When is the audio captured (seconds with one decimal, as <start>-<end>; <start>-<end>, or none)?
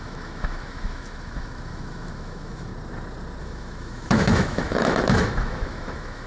2.7-3.4